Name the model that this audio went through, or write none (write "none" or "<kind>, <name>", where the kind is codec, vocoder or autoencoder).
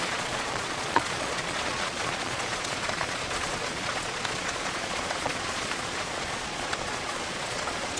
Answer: vocoder, Vocos